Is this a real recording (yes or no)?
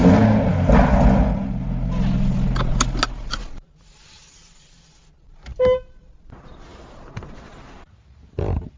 yes